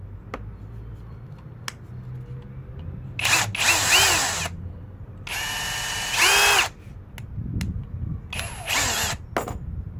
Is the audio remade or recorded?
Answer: recorded